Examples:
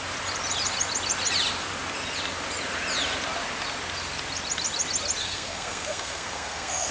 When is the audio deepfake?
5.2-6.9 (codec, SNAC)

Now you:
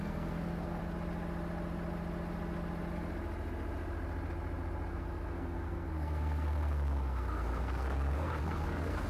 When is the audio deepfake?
0.0-0.8 (codec, SNAC); 4.9-9.1

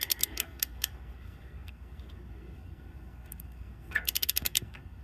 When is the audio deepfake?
0.0-5.0 (codec, SNAC)

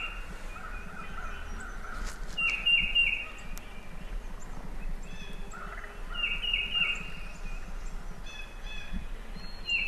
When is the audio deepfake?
none

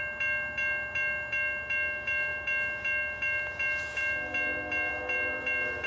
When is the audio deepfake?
none

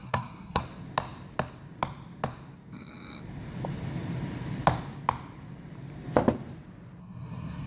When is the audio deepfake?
0.0-0.6 (codec, SNAC); 7.0-7.7

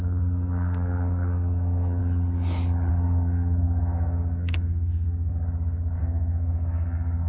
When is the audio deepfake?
0.0-2.0 (codec, SNAC); 2.9-5.3; 6.0-7.3

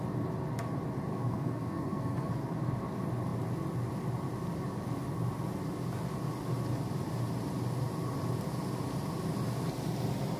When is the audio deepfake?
1.1-2.3 (codec, SNAC)